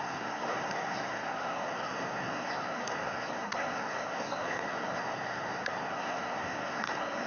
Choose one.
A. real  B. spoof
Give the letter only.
B